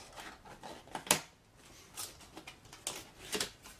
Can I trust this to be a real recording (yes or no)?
yes